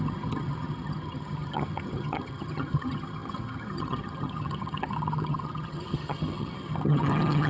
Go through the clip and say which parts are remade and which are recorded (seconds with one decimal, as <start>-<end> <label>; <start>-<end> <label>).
0.0-7.5 remade